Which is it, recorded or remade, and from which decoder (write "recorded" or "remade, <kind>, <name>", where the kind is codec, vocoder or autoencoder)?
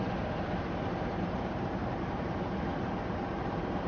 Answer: remade, vocoder, BigVGAN v2